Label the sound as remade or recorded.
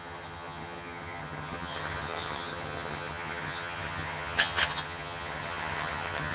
remade